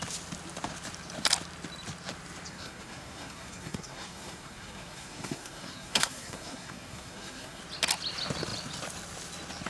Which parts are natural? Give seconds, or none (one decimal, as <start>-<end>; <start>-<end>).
0.0-2.5; 7.6-9.7